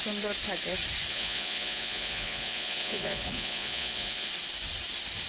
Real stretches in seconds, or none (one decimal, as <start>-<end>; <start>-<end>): 0.0-1.1; 4.3-5.3